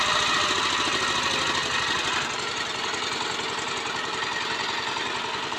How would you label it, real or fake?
real